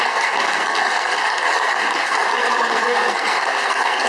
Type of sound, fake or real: fake